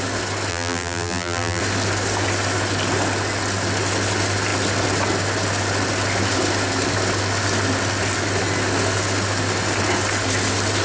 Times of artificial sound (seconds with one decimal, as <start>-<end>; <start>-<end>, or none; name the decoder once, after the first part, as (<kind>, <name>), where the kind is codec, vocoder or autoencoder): 0.5-1.6 (vocoder, BigVGAN v2)